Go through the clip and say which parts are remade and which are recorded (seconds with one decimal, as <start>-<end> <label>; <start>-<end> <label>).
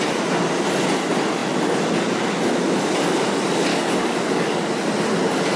0.0-3.7 recorded; 3.7-4.7 remade; 4.7-5.6 recorded